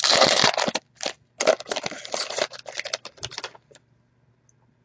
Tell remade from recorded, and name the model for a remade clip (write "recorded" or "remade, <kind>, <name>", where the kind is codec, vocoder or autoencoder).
recorded